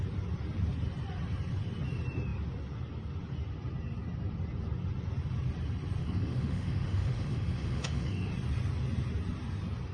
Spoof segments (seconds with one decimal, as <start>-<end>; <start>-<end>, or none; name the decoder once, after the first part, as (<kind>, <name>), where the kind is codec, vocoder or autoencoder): 6.0-8.3 (autoencoder, DAC-VAE)